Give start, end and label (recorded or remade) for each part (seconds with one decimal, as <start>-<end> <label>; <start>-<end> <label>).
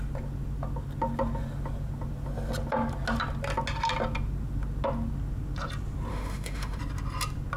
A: 0.0-6.1 recorded; 6.1-6.8 remade; 6.8-7.6 recorded